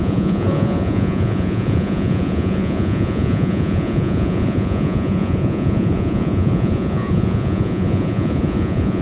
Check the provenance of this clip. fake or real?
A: fake